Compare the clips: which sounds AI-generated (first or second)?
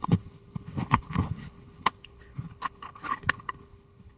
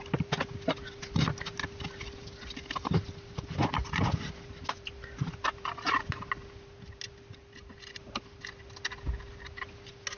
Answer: first